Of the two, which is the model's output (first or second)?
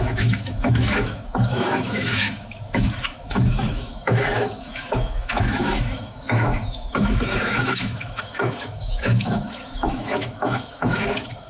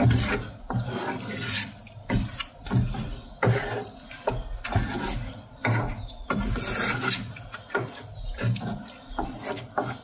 first